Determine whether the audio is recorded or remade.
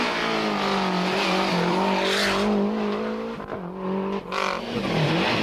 recorded